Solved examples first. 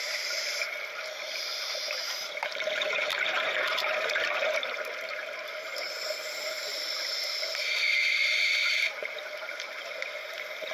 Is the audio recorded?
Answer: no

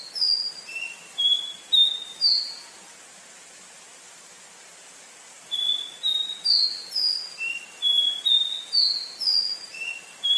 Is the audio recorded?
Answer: yes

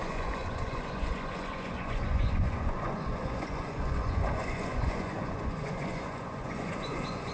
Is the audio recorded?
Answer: no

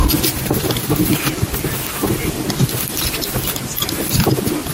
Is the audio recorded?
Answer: yes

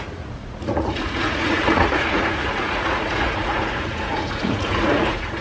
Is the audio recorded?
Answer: no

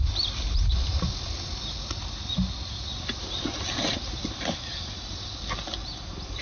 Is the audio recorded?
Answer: yes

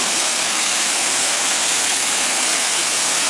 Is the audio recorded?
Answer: no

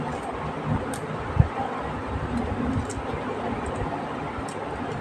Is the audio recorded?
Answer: yes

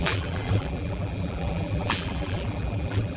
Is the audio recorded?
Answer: no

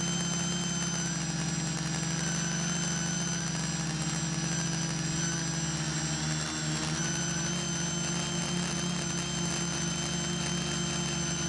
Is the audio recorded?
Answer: yes